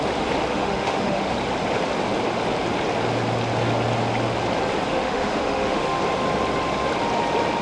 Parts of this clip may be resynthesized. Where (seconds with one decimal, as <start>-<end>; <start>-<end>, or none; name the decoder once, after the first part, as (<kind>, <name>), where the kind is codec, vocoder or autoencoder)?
0.5-1.3 (autoencoder, DAC-VAE); 4.9-6.0